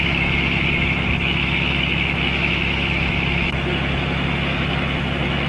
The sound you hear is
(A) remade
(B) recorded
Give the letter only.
A